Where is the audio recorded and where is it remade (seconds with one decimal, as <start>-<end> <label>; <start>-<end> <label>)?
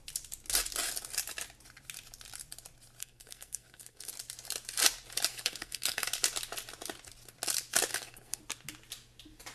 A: 0.0-3.0 recorded; 3.0-4.1 remade; 4.1-5.3 recorded; 5.3-6.1 remade; 6.1-7.9 recorded; 7.9-8.4 remade; 8.4-9.5 recorded